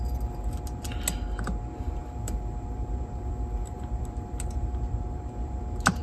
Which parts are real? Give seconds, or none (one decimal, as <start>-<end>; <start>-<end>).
0.0-2.0; 5.6-6.0